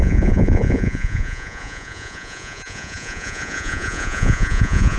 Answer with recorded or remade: remade